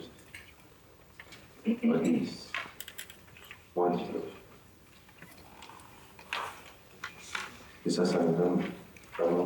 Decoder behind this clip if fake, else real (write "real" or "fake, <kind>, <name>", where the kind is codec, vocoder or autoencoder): real